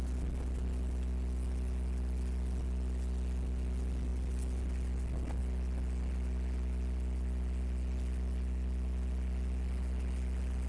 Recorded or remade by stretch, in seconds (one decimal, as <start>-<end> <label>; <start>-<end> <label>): 0.0-10.7 recorded

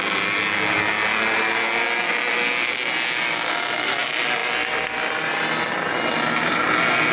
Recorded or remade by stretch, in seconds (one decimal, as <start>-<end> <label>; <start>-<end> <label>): 0.0-7.1 recorded

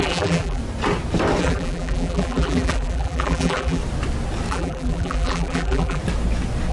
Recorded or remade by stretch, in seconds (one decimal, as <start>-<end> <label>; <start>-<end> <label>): 0.0-0.6 remade; 0.6-1.4 recorded; 1.4-3.8 remade; 3.8-4.5 recorded; 4.5-6.0 remade; 6.0-6.7 recorded

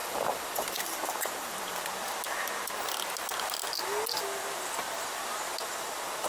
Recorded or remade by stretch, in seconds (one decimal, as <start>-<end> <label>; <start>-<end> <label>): 0.0-1.9 remade; 1.9-6.3 recorded

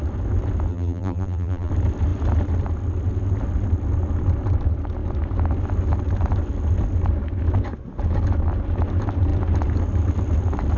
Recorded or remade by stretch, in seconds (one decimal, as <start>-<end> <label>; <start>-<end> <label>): 0.0-0.7 recorded; 0.7-1.7 remade; 1.7-10.8 recorded

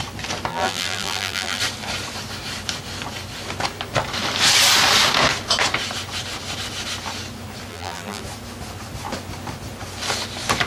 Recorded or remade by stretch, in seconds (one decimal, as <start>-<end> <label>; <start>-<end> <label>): 0.0-0.5 recorded; 0.5-1.6 remade; 1.6-7.7 recorded; 7.7-8.2 remade; 8.2-10.7 recorded